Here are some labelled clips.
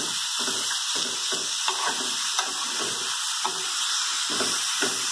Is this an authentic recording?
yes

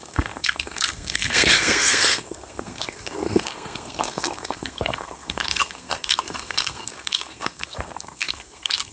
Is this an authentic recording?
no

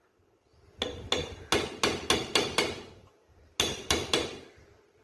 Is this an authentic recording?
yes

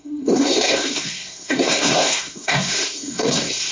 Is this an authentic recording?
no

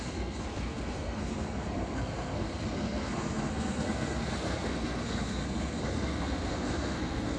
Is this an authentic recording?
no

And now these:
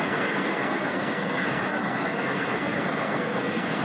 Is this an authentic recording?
no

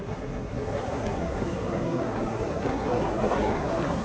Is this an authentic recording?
no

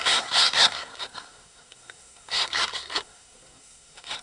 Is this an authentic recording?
no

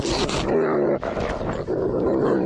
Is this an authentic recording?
yes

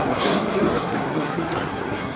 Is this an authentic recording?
no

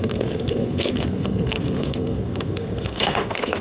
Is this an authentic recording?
no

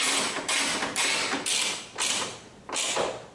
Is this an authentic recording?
yes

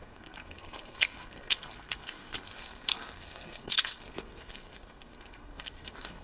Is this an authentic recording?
no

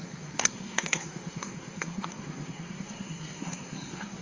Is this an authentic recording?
no